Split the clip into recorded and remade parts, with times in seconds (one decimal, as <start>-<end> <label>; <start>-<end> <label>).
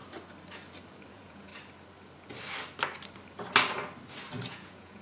0.0-1.1 recorded; 1.1-1.5 remade; 1.5-4.5 recorded; 4.5-5.0 remade